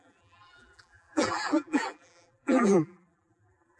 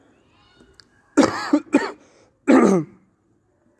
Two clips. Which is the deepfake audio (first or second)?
first